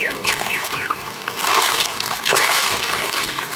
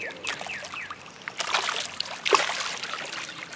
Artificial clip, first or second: first